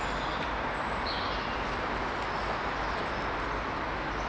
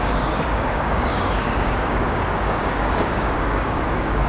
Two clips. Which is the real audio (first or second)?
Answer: first